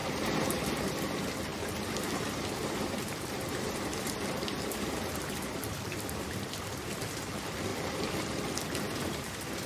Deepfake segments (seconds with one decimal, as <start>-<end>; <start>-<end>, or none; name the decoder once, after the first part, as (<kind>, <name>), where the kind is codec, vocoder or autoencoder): 0.8-9.7 (vocoder, BigVGAN v2)